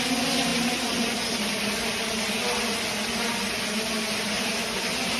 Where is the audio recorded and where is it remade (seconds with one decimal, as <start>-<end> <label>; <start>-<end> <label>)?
0.0-5.2 recorded